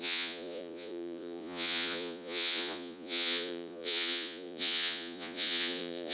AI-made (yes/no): yes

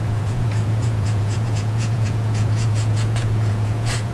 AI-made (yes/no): yes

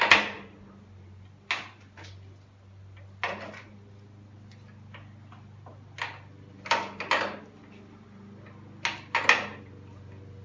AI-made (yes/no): no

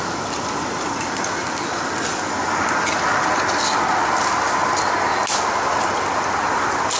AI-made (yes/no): no